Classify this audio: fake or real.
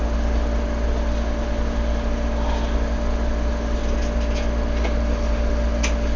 real